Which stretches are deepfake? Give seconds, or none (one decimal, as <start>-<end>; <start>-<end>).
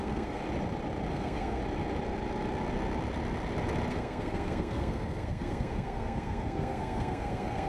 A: 0.0-0.4; 1.1-1.6; 3.9-7.7